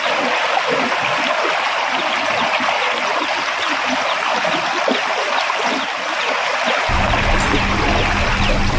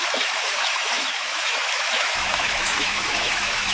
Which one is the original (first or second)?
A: first